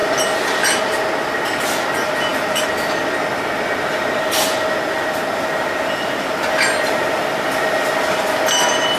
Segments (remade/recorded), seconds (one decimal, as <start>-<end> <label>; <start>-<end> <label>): 0.0-9.0 recorded